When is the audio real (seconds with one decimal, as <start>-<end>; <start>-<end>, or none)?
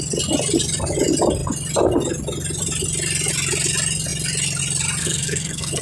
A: 0.0-5.0